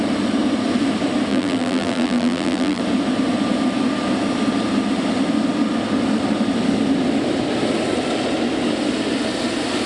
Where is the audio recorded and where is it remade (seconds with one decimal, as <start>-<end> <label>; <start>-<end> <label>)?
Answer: 0.0-1.3 recorded; 1.3-2.8 remade; 2.8-9.9 recorded